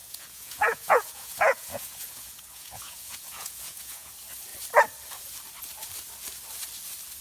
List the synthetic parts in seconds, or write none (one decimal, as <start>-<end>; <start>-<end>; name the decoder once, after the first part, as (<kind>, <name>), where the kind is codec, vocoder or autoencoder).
0.0-4.1 (vocoder, Vocos)